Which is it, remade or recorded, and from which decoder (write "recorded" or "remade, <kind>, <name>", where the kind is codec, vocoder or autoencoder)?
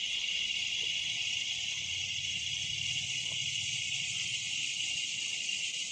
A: remade, vocoder, BigVGAN v2